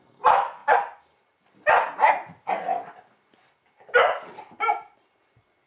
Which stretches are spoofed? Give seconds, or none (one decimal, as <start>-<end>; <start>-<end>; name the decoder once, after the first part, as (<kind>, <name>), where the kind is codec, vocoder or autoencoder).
none